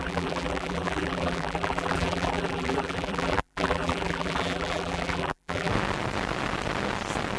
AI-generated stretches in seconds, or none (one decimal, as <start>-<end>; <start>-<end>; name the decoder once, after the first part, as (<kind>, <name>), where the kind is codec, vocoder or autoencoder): 0.0-5.7 (vocoder, BigVGAN v2)